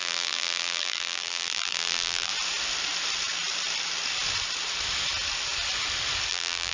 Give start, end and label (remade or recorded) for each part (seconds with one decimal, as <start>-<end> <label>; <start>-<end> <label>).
0.0-2.3 remade; 2.3-6.3 recorded; 6.3-6.7 remade